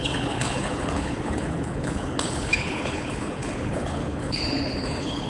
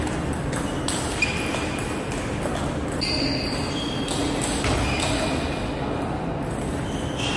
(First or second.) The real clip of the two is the second